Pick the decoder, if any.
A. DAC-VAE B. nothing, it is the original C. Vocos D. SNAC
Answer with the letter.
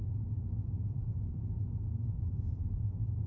C